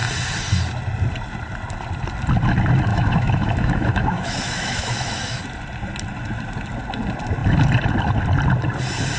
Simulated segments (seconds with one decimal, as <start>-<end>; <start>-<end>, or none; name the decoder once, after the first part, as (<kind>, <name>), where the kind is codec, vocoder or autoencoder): 2.9-5.4 (autoencoder, DAC-VAE)